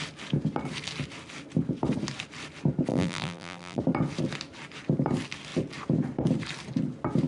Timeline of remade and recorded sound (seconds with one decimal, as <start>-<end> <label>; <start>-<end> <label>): 0.0-2.9 recorded; 2.9-3.8 remade; 3.8-7.3 recorded